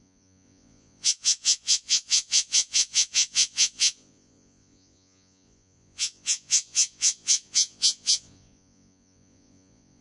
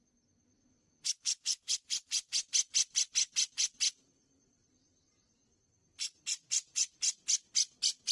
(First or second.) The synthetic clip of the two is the first